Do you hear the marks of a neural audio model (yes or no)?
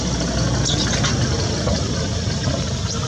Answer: no